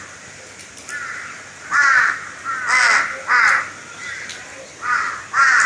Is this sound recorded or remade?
recorded